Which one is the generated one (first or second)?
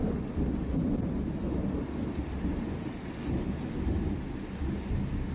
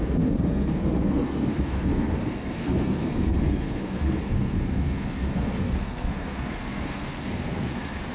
second